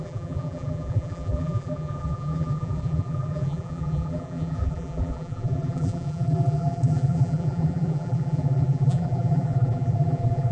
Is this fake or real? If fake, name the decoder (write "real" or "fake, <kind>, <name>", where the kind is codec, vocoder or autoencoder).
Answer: fake, vocoder, BigVGAN v2